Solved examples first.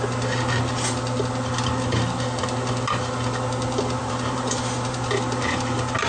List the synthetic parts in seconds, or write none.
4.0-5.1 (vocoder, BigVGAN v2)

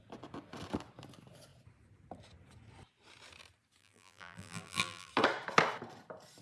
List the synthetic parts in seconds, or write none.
3.8-5.1 (vocoder, BigVGAN v2)

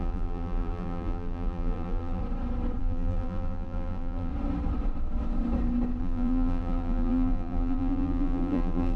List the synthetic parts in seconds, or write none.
0.0-2.2 (vocoder, BigVGAN v2); 2.8-4.3; 6.0-9.0

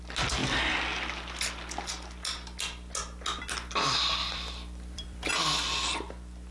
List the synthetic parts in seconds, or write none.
4.2-5.3 (vocoder, BigVGAN v2)